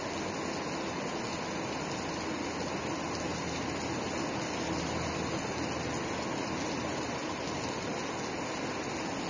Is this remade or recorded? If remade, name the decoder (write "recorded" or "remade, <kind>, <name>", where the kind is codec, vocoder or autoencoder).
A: recorded